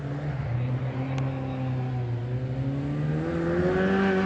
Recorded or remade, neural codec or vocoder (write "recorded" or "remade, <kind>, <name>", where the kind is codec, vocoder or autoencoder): recorded